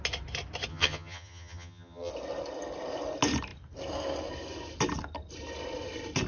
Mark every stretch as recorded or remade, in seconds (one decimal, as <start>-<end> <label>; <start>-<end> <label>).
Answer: 0.0-0.7 recorded; 0.7-2.1 remade; 2.1-6.3 recorded